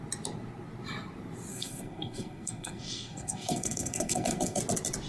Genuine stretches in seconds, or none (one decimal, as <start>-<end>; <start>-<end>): 0.0-1.5; 4.6-5.1

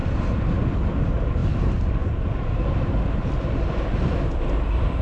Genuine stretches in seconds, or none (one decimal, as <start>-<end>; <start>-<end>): 0.0-5.0

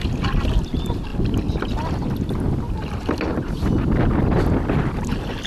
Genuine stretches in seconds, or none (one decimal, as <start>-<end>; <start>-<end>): 0.0-5.5

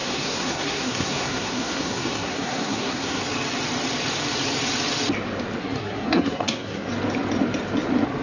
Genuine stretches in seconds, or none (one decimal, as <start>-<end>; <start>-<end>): 3.2-5.6; 6.9-8.2